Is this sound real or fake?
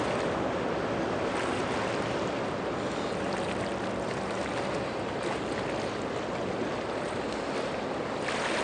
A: real